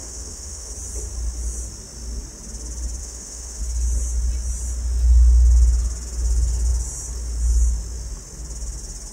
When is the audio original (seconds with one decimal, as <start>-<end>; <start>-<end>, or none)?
0.7-3.0; 3.6-9.1